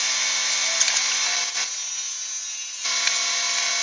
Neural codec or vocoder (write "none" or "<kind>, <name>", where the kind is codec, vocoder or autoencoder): none